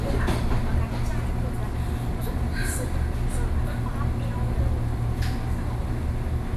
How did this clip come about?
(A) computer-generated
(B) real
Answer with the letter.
B